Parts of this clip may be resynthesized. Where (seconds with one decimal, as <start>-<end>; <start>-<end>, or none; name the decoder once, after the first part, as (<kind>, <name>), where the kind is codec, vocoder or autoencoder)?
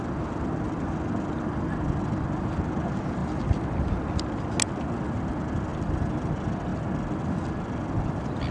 3.2-4.0 (vocoder, BigVGAN v2); 5.7-6.3